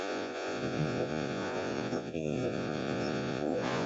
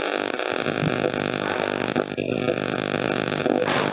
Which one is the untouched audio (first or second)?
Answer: second